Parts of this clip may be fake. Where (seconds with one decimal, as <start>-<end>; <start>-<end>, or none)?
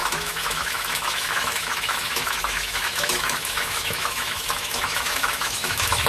0.0-6.1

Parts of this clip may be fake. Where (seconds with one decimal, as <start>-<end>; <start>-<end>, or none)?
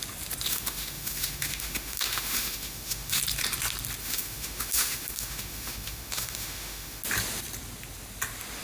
0.5-3.2; 4.0-7.0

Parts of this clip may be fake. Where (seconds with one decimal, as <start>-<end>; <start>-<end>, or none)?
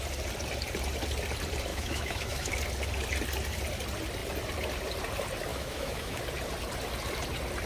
1.7-2.5; 5.5-6.2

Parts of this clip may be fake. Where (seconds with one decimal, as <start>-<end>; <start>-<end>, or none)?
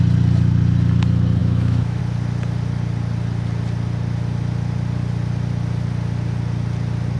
1.4-2.0